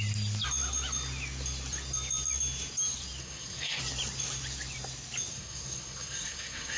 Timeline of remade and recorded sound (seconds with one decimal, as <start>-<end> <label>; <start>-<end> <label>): 0.0-3.2 recorded; 3.2-3.8 remade; 3.8-5.3 recorded; 5.3-6.8 remade